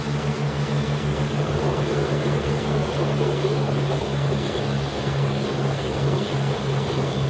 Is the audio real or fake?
fake